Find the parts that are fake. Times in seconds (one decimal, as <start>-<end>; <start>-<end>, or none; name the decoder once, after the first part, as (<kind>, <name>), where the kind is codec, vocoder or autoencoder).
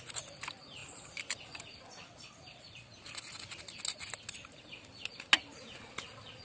none